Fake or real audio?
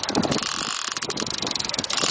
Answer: real